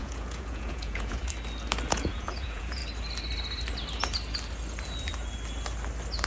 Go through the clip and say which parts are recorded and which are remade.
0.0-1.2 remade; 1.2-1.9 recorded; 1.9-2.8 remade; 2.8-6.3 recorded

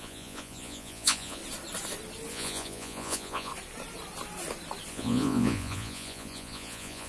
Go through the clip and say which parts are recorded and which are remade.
0.0-1.4 remade; 1.4-2.3 recorded; 2.3-3.5 remade; 3.5-4.9 recorded; 4.9-7.1 remade

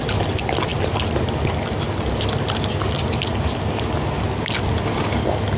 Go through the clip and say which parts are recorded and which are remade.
0.0-5.6 recorded

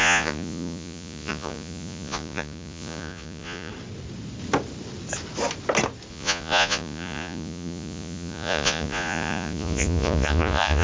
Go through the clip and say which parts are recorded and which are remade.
0.0-3.7 remade; 3.7-6.1 recorded; 6.1-10.8 remade

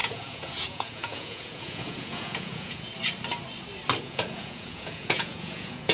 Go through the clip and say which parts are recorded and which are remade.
0.0-2.9 remade; 2.9-4.0 recorded; 4.0-5.9 remade

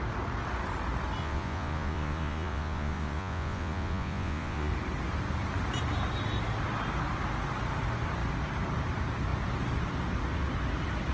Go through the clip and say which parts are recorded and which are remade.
0.0-1.2 recorded; 1.2-4.7 remade; 4.7-11.1 recorded